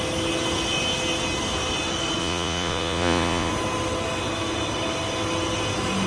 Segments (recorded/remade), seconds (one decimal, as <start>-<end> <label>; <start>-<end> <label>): 0.0-2.2 recorded; 2.2-3.5 remade; 3.5-6.1 recorded